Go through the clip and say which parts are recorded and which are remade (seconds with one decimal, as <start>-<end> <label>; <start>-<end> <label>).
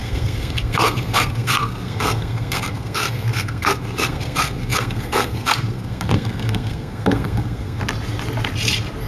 0.0-7.8 remade; 7.8-9.1 recorded